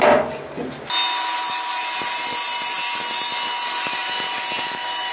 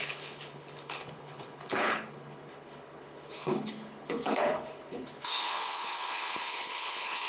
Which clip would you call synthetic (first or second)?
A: second